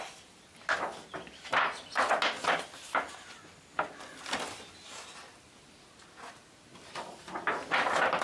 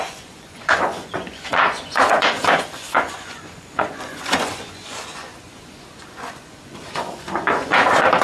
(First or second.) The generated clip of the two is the second